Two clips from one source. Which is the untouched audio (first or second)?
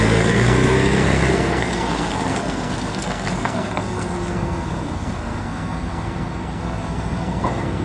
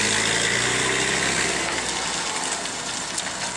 second